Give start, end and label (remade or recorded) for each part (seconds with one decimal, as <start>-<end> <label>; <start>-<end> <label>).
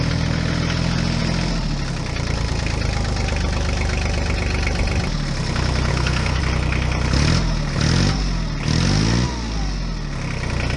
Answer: 0.0-5.9 recorded; 5.9-6.4 remade; 6.4-10.8 recorded